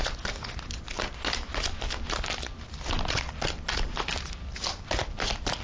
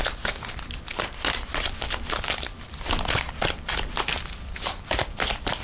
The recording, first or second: first